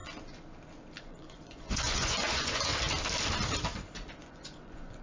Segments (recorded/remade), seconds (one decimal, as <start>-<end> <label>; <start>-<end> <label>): 0.0-1.0 recorded; 1.0-2.7 remade; 2.7-4.2 recorded; 4.2-5.0 remade